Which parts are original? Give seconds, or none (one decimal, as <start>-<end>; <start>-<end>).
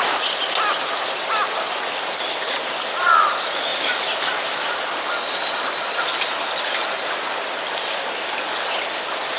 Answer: 0.0-9.4